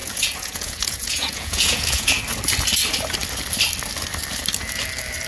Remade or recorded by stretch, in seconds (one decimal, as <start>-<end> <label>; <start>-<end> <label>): 0.0-2.2 remade; 2.2-5.3 recorded